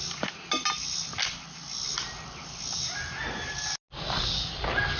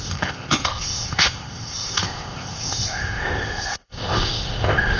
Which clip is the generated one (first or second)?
second